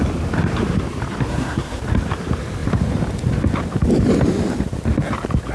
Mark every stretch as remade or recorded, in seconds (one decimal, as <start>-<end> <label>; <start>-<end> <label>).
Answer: 0.0-1.3 recorded; 1.3-1.8 remade; 1.8-5.5 recorded